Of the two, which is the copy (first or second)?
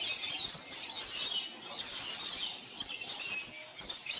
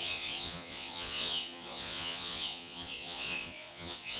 second